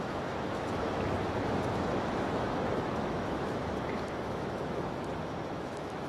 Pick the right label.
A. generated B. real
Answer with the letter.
A